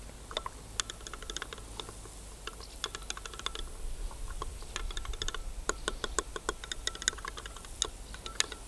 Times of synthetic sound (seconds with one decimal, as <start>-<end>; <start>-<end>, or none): none